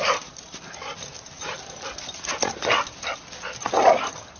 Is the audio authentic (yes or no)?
yes